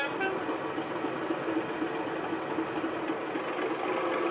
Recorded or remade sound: recorded